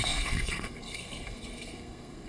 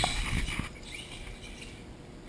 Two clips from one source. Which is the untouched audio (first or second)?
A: second